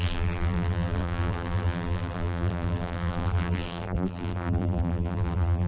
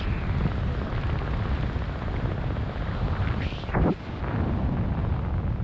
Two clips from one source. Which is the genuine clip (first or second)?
second